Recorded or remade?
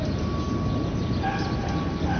recorded